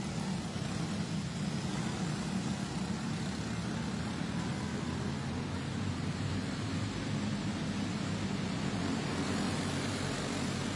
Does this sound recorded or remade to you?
recorded